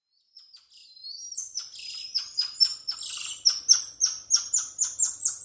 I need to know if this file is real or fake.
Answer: real